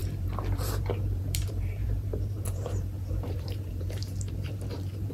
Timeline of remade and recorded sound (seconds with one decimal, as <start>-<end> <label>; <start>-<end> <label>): 0.0-5.1 remade